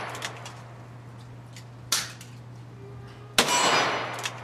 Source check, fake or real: real